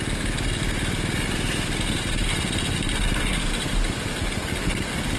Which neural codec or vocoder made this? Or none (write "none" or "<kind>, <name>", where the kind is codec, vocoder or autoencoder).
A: none